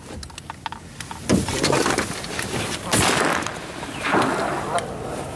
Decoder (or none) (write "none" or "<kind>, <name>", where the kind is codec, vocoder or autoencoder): none